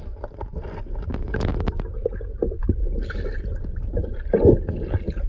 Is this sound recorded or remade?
recorded